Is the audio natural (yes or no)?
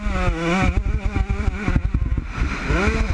yes